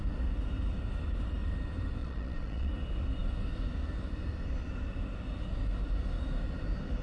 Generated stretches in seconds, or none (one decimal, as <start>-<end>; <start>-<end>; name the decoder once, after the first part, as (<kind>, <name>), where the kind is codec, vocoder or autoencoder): 2.0-2.7 (vocoder, Vocos)